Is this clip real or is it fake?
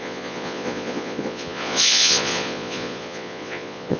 fake